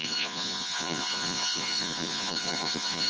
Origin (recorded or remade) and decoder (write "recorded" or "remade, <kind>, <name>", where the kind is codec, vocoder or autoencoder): remade, vocoder, Vocos